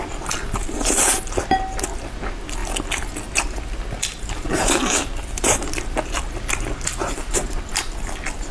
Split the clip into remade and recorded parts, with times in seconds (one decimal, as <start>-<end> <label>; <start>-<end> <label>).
0.0-8.5 recorded